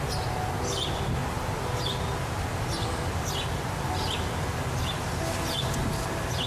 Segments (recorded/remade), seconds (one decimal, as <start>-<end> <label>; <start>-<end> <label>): 0.0-6.5 recorded